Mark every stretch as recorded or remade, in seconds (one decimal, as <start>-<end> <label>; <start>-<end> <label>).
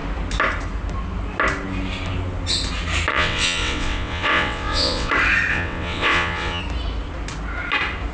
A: 0.0-3.1 recorded; 3.1-5.1 remade; 5.1-5.5 recorded; 5.5-6.6 remade; 6.6-8.1 recorded